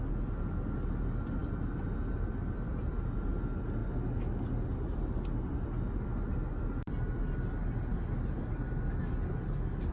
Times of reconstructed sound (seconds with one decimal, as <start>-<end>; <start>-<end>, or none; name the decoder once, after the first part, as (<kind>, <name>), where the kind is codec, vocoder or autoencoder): none